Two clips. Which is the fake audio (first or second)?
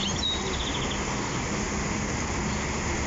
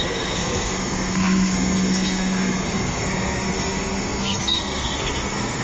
second